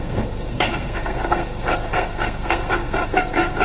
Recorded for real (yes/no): no